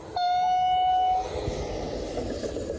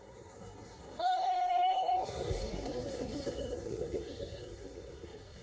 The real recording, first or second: first